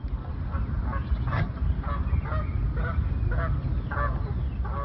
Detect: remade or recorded recorded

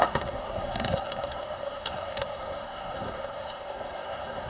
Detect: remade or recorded remade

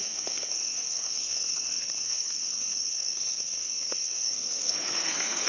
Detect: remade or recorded remade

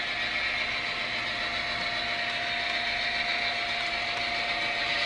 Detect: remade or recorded recorded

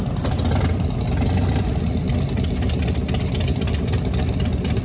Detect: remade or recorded recorded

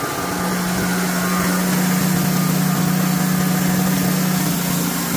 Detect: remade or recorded recorded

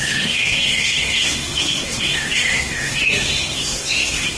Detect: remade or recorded remade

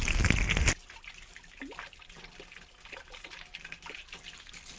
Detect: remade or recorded recorded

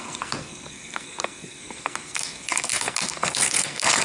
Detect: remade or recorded remade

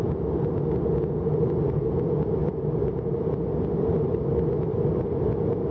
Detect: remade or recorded recorded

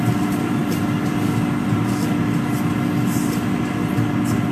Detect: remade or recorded recorded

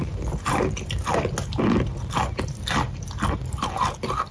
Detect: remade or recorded recorded